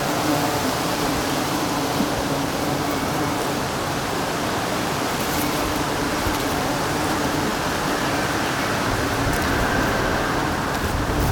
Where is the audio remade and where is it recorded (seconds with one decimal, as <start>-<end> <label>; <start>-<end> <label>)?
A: 0.0-11.3 remade